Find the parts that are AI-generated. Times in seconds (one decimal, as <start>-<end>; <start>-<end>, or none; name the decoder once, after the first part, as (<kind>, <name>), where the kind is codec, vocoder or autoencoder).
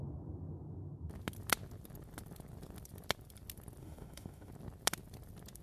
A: 3.8-4.5 (autoencoder, DAC-VAE)